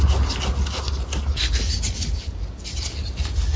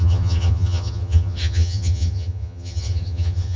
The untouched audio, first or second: first